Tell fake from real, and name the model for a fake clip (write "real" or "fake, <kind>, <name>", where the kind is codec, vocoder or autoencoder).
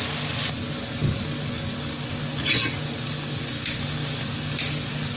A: real